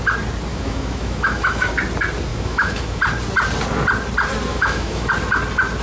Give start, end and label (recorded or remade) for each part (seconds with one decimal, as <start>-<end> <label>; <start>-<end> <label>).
0.0-0.5 recorded; 0.5-1.7 remade; 1.7-2.3 recorded; 2.3-3.0 remade; 3.0-4.5 recorded; 4.5-5.1 remade; 5.1-5.8 recorded